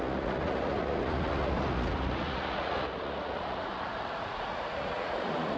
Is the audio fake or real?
fake